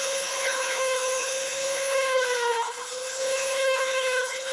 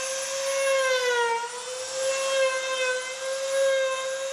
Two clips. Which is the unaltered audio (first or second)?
second